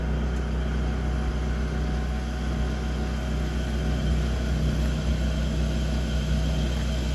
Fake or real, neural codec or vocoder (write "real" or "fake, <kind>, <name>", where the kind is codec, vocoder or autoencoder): real